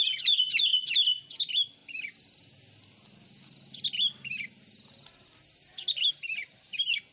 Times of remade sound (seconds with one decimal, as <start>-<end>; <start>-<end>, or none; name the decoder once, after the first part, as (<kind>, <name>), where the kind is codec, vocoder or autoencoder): none